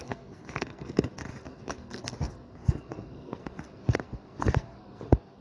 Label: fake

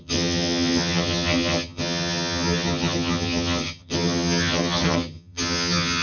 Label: fake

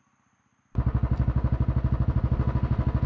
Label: real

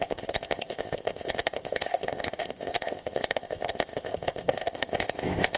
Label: fake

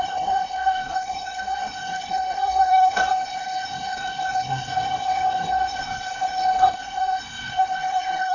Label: fake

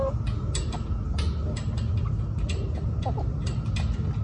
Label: real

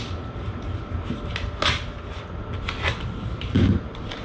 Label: real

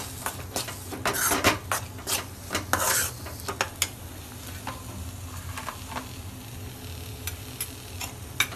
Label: real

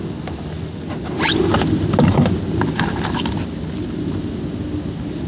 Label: real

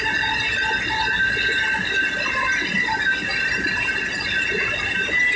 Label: real